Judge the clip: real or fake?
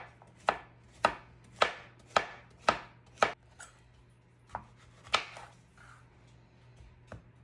real